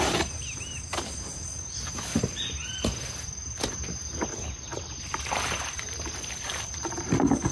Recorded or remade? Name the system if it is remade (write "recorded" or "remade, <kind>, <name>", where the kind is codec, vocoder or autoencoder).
recorded